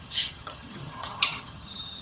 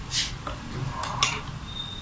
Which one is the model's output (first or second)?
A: first